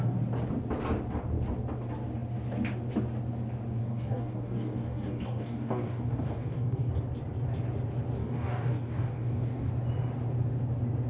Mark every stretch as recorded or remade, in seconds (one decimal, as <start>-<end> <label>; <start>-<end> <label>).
0.0-3.8 recorded; 3.8-6.9 remade; 6.9-8.2 recorded; 8.2-9.7 remade; 9.7-11.1 recorded